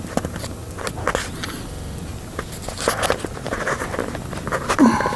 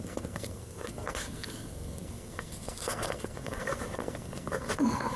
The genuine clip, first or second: first